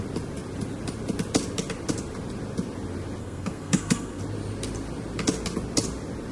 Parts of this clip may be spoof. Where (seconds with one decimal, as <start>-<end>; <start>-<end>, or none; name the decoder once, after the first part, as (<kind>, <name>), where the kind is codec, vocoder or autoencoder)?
3.2-4.2 (codec, SNAC)